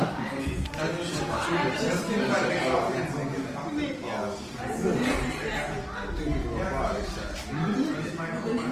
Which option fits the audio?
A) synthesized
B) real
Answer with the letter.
B